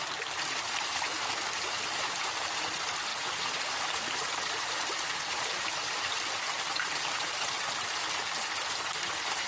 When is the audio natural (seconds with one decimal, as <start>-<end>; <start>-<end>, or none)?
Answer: 0.0-3.1; 8.0-9.5